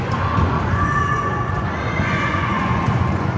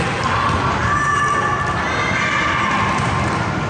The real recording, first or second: second